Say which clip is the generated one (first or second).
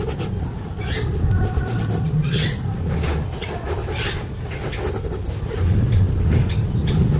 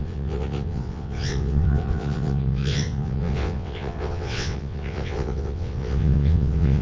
second